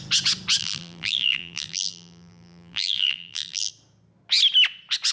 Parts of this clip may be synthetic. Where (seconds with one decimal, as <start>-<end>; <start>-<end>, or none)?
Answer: 0.6-3.7